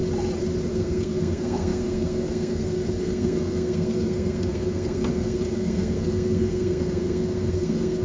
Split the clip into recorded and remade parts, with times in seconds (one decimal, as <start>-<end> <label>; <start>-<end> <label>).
0.0-0.7 recorded; 0.7-8.0 remade